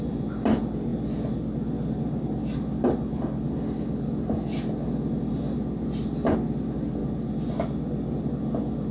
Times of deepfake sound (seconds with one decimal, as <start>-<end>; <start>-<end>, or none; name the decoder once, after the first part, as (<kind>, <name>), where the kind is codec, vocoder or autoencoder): none